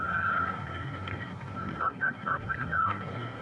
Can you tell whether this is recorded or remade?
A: remade